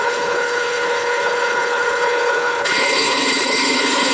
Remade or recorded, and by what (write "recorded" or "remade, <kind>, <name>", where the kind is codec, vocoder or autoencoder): remade, codec, HILCodec